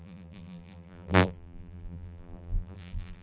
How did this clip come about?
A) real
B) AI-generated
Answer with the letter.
B